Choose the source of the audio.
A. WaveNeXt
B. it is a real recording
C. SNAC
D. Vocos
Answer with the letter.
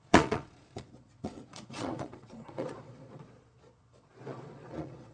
D